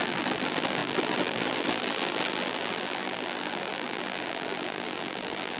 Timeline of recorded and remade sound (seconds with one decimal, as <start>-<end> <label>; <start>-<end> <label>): 0.0-5.6 remade